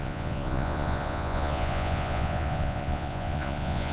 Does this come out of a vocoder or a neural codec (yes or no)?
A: yes